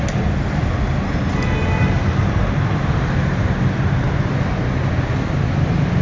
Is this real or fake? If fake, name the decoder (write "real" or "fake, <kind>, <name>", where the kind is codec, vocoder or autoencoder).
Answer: real